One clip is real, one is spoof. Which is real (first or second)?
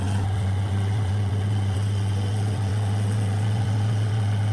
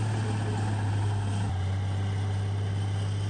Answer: second